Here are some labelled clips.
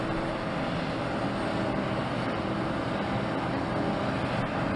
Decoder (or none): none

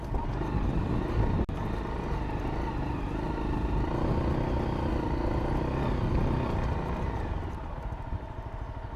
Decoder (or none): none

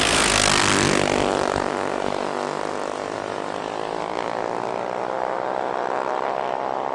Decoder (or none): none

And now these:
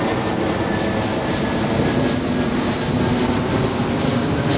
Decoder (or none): none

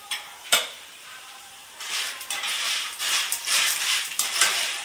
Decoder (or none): vocoder, BigVGAN v2